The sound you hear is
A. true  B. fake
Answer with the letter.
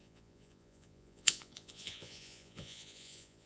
B